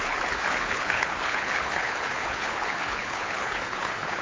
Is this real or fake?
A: fake